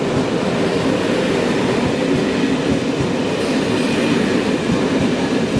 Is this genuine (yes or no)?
yes